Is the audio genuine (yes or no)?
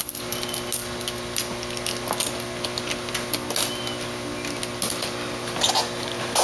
yes